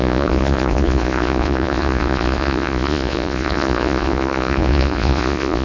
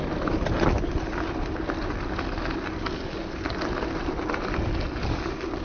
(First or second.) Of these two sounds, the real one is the second